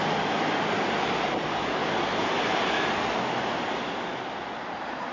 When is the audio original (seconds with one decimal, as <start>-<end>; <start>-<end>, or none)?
0.0-5.1